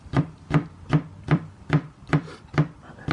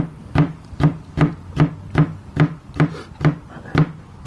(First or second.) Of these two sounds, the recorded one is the second